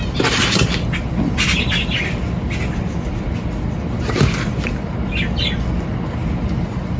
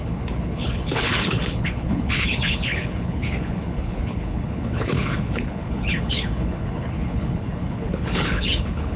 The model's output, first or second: second